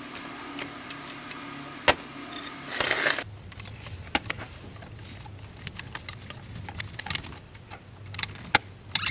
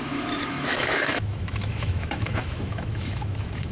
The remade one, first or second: second